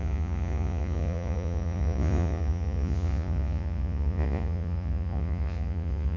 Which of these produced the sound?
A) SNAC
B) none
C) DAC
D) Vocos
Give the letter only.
D